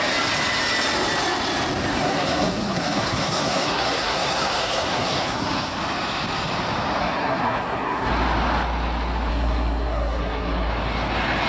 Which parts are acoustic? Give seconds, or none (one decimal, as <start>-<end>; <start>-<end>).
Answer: 0.0-1.9; 5.8-7.0; 8.1-9.3; 10.7-11.5